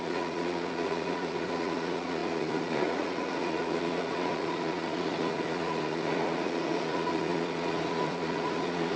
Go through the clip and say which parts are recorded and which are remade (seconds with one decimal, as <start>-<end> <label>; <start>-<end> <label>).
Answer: 0.0-9.0 remade